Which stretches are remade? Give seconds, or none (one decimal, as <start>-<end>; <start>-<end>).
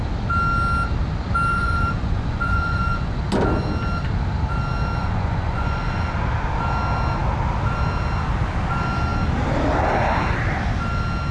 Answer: 1.5-3.2; 5.0-6.1